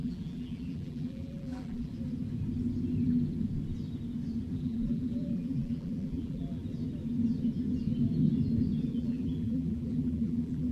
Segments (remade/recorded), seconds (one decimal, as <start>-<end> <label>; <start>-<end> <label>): 0.0-1.9 remade; 1.9-4.5 recorded; 4.5-6.6 remade; 6.6-8.8 recorded; 8.8-10.7 remade

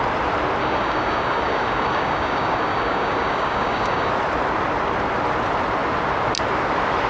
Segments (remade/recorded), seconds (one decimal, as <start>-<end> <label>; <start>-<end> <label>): 0.0-0.6 recorded; 0.6-4.1 remade; 4.1-7.1 recorded

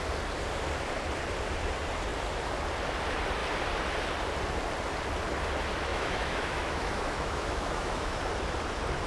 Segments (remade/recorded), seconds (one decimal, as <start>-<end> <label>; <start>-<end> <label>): 0.0-5.9 recorded; 5.9-8.3 remade; 8.3-9.1 recorded

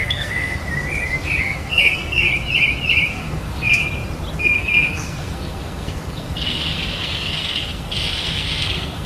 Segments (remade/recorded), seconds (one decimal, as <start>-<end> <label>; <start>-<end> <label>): 0.0-0.6 remade; 0.6-1.4 recorded; 1.4-2.3 remade; 2.3-3.1 recorded; 3.1-3.8 remade; 3.8-4.4 recorded; 4.4-9.1 remade

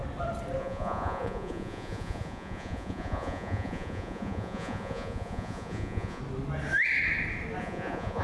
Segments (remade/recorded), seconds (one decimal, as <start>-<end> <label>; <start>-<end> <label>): 0.0-0.6 recorded; 0.6-6.2 remade; 6.2-7.6 recorded; 7.6-8.2 remade